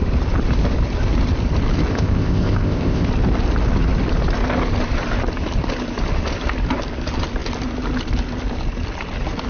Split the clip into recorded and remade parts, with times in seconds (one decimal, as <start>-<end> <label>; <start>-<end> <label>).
0.0-1.9 recorded; 1.9-3.1 remade; 3.1-9.5 recorded

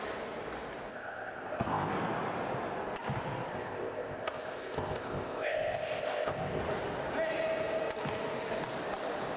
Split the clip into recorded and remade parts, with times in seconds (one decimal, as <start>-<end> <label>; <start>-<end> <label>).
0.0-0.9 recorded; 0.9-1.9 remade; 1.9-3.5 recorded; 3.5-6.6 remade; 6.6-9.4 recorded

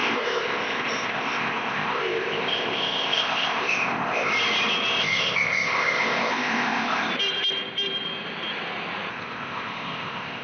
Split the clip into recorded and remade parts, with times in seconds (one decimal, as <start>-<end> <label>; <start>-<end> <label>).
0.0-4.3 remade; 4.3-5.0 recorded; 5.0-7.1 remade; 7.1-9.1 recorded; 9.1-10.4 remade

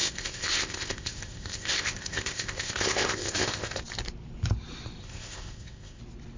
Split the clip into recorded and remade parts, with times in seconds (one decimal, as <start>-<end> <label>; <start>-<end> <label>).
0.0-3.8 remade; 3.8-5.0 recorded; 5.0-6.0 remade; 6.0-6.4 recorded